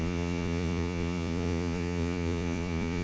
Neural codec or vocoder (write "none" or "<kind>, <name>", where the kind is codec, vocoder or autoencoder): vocoder, Vocos